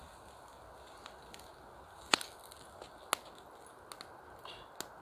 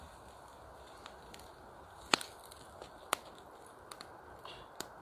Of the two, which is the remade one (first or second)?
second